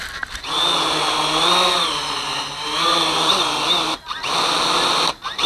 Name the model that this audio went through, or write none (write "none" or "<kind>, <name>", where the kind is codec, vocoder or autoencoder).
none